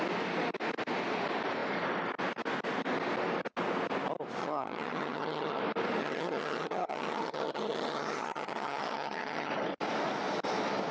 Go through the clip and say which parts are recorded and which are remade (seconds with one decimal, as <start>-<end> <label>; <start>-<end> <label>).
0.0-4.4 recorded; 4.4-5.6 remade; 5.6-6.0 recorded; 6.0-9.5 remade; 9.5-10.9 recorded